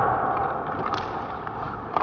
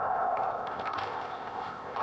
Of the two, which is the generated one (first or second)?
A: second